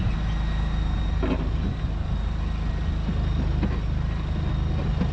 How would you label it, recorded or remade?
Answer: recorded